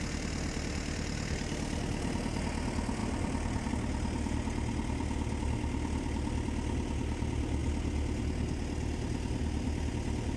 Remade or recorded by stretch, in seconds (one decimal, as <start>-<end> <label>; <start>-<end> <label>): 0.0-3.0 recorded; 3.0-3.7 remade; 3.7-10.4 recorded